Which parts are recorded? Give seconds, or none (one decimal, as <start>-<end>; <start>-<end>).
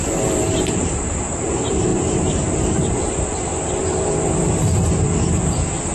none